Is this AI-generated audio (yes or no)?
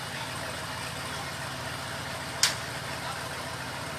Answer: no